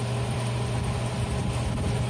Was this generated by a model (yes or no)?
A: no